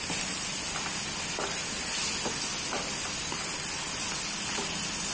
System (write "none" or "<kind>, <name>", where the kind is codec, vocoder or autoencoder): none